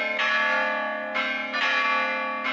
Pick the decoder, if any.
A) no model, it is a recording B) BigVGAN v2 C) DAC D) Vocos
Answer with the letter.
A